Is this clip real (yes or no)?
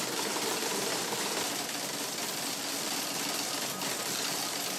yes